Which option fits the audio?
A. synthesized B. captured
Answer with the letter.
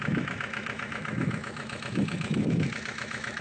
A